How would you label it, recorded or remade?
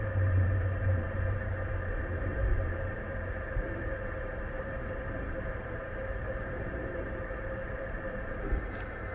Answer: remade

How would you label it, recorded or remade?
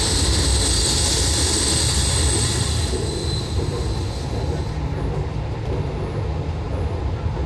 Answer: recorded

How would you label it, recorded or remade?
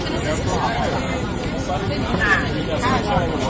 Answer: remade